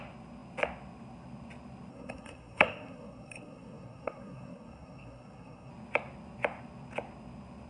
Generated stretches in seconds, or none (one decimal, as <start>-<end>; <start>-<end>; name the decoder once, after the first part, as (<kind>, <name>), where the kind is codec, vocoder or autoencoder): 1.9-5.7 (codec, SNAC)